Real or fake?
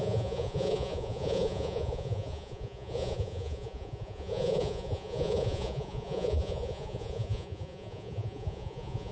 fake